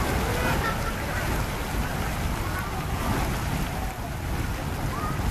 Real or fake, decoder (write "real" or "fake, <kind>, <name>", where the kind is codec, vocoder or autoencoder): real